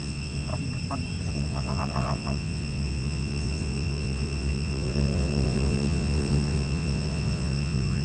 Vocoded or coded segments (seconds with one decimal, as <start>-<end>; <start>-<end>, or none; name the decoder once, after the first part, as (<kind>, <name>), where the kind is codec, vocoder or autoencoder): 0.0-0.5 (vocoder, WaveNeXt); 1.3-8.0

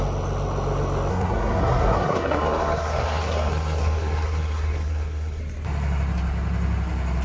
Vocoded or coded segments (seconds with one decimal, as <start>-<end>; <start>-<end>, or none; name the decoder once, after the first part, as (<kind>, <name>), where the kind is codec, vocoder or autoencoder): 1.1-5.4 (codec, SNAC)

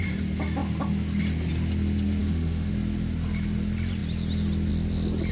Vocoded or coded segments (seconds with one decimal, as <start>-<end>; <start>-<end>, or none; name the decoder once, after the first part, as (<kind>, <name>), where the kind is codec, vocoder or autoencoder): 2.2-2.7 (autoencoder, DAC-VAE)

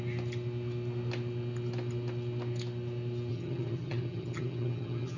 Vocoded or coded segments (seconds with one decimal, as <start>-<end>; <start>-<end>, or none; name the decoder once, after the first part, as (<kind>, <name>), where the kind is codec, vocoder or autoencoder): 3.3-5.2 (vocoder, HiFi-GAN)

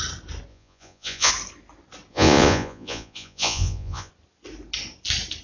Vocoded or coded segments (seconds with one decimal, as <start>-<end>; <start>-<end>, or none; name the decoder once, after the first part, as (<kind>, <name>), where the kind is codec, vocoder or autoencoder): 0.5-1.3 (vocoder, Vocos); 2.1-4.1

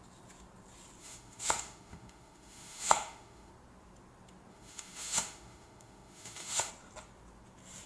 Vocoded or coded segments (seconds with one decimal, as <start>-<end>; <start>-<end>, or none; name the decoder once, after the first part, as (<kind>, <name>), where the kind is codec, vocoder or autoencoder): 1.0-3.5 (autoencoder, DAC-VAE); 4.5-6.7

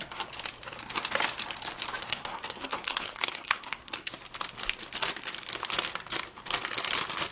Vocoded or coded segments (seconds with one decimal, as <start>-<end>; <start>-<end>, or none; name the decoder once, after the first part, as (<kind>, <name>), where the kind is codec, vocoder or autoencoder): 2.0-4.1 (codec, SNAC)

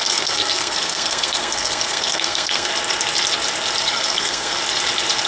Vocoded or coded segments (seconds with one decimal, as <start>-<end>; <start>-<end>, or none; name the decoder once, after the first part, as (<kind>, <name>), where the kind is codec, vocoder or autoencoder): 0.0-2.7 (codec, SNAC); 3.8-4.6